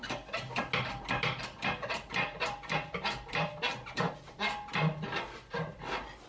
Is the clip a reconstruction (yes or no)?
no